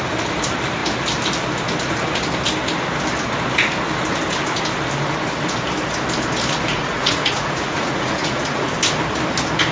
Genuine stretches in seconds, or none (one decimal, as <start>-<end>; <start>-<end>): 0.0-6.7; 8.7-9.7

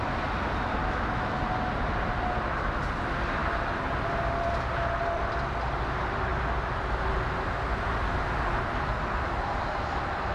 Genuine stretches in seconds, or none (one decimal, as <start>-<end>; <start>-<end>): 0.0-0.8; 1.4-10.3

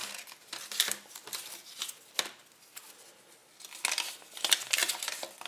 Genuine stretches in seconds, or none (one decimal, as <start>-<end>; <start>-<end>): 0.0-5.5

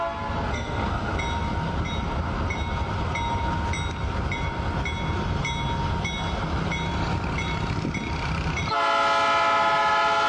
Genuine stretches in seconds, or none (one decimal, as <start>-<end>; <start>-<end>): 0.0-0.5; 1.1-10.3